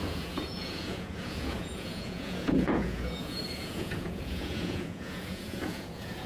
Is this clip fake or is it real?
fake